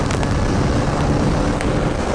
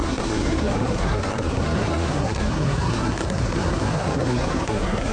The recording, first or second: first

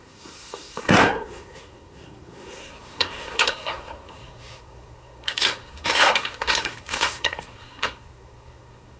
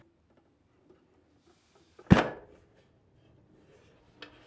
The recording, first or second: second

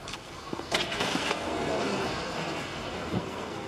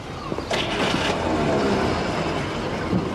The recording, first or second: second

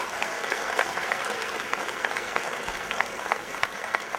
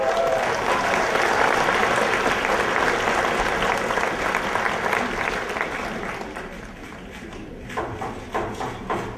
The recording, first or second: second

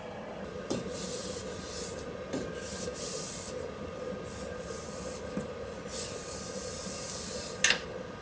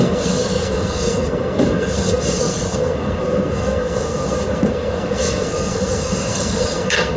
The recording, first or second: first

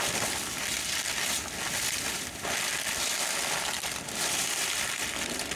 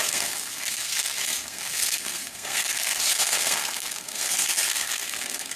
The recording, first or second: first